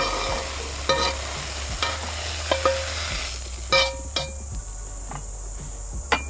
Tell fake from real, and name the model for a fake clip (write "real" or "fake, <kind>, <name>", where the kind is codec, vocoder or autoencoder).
real